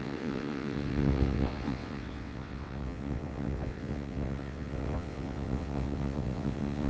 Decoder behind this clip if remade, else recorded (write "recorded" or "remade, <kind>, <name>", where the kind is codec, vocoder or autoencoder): remade, vocoder, WaveNeXt